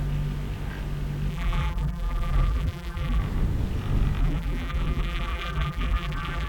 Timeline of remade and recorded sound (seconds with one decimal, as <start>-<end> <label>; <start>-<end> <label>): 0.0-1.3 recorded; 1.3-3.2 remade; 3.2-4.2 recorded; 4.2-6.5 remade